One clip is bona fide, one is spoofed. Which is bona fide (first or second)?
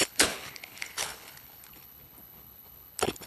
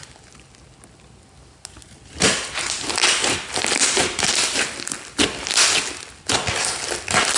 second